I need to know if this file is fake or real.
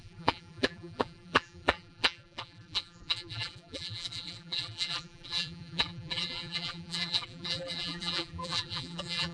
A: fake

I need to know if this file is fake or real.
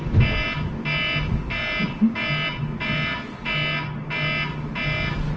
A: real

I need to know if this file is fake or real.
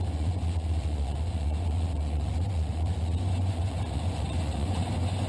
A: fake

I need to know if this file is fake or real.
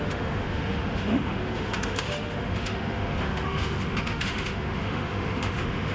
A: fake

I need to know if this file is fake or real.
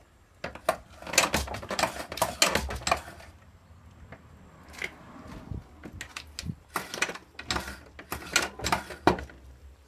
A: real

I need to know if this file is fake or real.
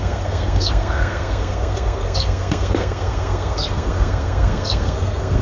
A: fake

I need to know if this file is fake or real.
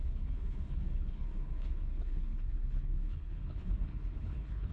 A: fake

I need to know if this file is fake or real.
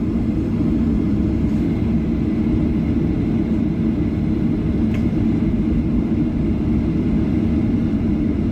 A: real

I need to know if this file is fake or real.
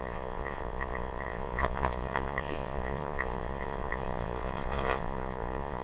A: fake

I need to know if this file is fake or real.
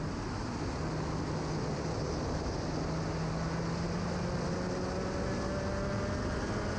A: real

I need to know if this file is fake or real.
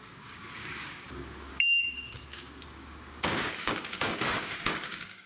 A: fake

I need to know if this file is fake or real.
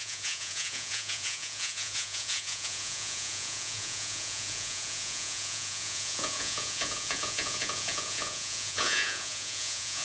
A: fake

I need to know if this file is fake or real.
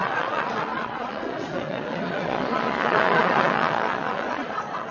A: fake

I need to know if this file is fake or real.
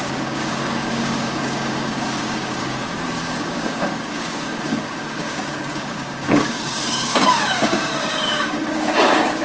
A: fake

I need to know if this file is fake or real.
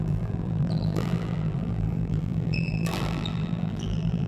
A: fake